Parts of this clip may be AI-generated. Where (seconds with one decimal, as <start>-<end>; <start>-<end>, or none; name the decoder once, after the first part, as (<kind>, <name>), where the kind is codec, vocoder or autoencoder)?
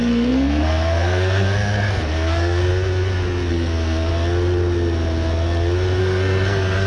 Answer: 0.0-2.7 (codec, SNAC); 3.5-4.1; 6.0-6.9